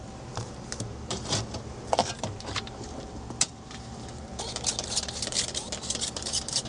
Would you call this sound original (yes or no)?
no